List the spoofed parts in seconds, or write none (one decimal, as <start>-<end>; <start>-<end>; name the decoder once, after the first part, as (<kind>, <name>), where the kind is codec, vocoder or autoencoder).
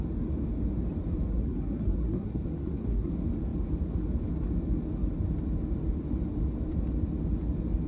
1.3-3.1 (codec, SNAC)